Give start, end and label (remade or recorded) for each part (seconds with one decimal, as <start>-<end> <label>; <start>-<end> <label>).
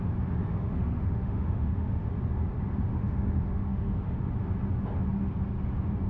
0.0-0.5 recorded; 0.5-2.1 remade; 2.1-2.9 recorded; 2.9-4.3 remade; 4.3-6.1 recorded